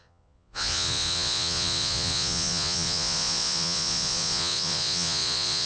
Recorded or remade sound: remade